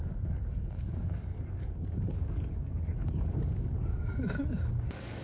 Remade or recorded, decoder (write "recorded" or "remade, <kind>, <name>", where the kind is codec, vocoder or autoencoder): remade, codec, DAC